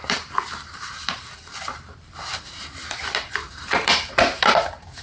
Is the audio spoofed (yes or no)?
yes